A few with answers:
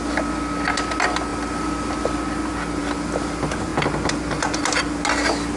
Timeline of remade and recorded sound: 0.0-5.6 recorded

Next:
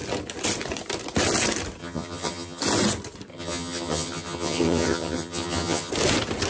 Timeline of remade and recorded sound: 0.0-1.8 recorded; 1.8-2.6 remade; 2.6-3.3 recorded; 3.3-5.9 remade; 5.9-6.5 recorded

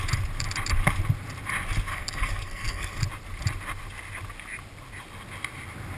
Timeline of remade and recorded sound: 0.0-1.9 recorded; 1.9-3.0 remade; 3.0-6.0 recorded

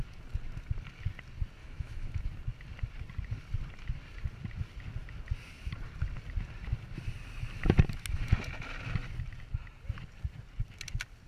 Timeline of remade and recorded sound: 0.0-1.6 recorded; 1.6-2.2 remade; 2.2-11.3 recorded